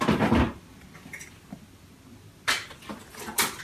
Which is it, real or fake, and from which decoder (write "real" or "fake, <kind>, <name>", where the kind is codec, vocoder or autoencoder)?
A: real